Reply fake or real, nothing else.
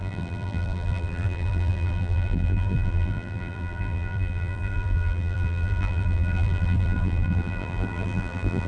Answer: fake